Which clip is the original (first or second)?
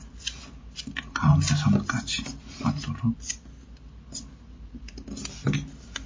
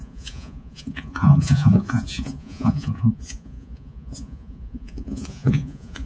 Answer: first